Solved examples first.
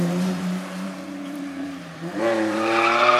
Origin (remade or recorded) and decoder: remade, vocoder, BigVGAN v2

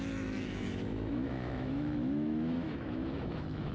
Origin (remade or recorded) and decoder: remade, autoencoder, DAC-VAE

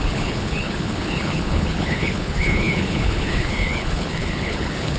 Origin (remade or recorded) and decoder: remade, codec, HILCodec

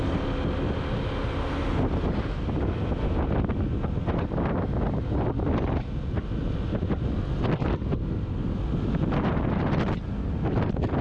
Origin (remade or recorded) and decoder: recorded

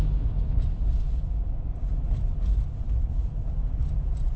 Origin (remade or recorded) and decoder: recorded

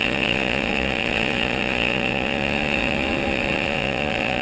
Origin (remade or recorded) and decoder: remade, vocoder, Vocos